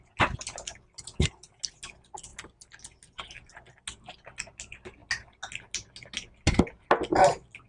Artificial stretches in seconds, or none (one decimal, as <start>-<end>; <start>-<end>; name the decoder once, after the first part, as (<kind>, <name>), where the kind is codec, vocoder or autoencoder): none